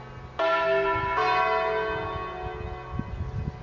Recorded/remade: recorded